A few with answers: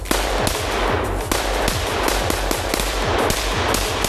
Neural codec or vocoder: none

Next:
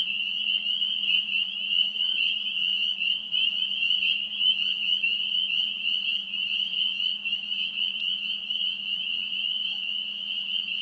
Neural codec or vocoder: vocoder, Vocos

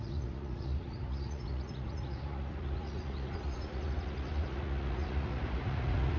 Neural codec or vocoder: vocoder, Vocos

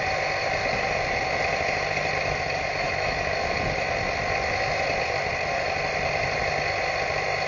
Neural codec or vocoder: none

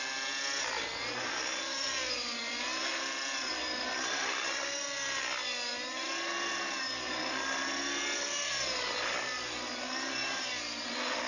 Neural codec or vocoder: none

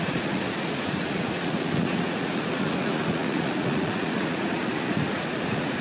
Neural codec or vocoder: vocoder, Vocos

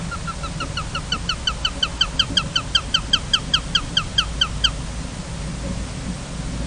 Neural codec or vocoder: none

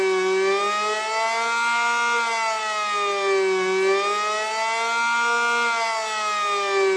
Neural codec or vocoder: none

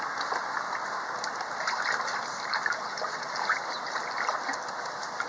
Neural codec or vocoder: none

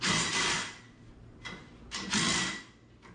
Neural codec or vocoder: none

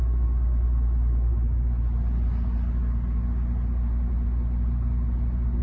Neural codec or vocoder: none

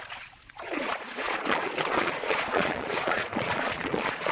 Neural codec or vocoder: vocoder, Vocos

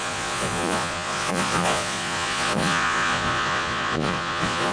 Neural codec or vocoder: vocoder, Vocos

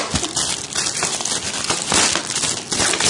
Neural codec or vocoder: none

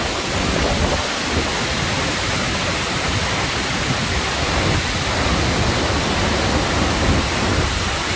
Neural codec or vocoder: none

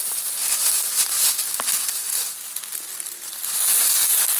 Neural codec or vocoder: none